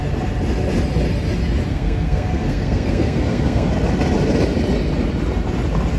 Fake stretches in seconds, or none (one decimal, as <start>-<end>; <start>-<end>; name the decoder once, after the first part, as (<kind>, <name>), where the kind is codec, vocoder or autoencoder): 1.7-3.7 (codec, SNAC)